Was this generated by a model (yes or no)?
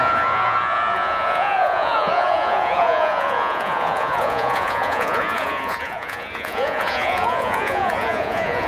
yes